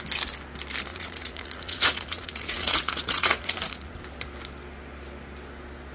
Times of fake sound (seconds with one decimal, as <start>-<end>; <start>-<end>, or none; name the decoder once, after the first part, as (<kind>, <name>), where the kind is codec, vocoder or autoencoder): 0.9-3.9 (vocoder, Vocos)